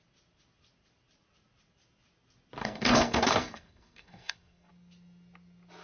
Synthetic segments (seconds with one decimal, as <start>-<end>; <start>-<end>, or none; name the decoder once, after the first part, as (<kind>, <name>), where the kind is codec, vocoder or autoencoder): 2.6-4.7 (codec, SNAC)